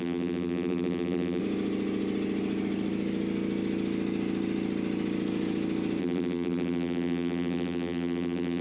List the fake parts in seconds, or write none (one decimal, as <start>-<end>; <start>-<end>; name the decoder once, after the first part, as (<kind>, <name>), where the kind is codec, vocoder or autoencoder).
0.0-1.4 (vocoder, BigVGAN v2); 6.0-8.6